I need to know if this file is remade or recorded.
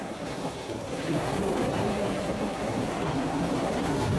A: remade